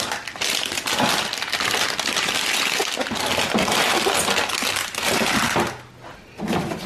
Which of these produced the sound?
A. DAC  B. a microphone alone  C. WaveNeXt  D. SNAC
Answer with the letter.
B